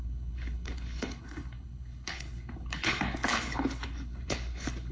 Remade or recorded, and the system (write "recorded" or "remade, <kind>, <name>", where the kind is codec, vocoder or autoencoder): remade, codec, HILCodec